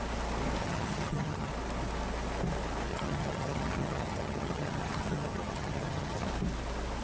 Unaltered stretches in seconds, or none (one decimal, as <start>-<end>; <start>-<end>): 0.0-0.6; 1.5-2.9; 6.3-7.0